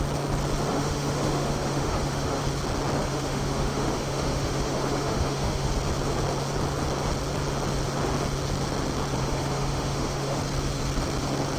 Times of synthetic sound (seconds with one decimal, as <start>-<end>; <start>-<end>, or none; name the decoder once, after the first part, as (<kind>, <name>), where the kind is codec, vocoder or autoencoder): 0.7-2.4 (autoencoder, DAC-VAE); 3.0-5.7; 9.2-10.4